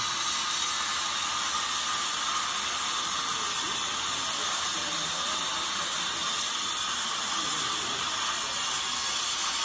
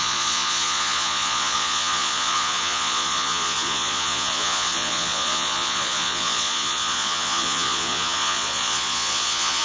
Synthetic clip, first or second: second